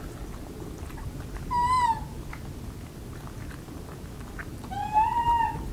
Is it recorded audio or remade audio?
recorded